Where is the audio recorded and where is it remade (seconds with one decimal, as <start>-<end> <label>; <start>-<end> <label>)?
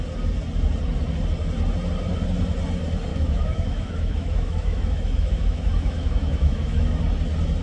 0.0-3.1 recorded; 3.1-7.0 remade; 7.0-7.6 recorded